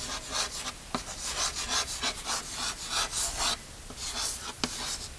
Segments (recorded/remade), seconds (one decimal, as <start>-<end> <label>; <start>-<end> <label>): 0.0-1.3 recorded; 1.3-2.3 remade; 2.3-4.0 recorded; 4.0-4.6 remade; 4.6-5.2 recorded